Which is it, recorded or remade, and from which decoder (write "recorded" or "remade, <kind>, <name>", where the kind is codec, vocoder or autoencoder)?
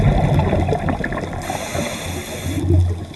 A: recorded